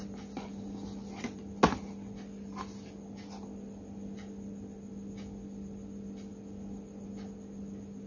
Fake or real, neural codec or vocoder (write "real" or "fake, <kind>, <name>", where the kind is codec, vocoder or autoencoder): real